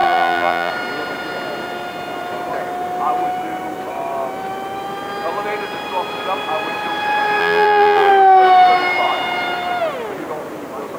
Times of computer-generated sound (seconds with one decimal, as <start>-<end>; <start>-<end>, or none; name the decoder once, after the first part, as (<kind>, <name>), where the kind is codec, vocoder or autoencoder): 0.0-0.7 (vocoder, BigVGAN v2); 7.4-8.1